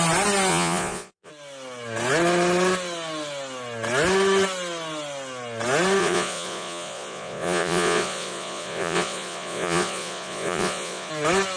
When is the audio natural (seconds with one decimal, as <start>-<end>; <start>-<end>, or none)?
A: 0.0-0.5; 1.3-6.0; 11.1-11.6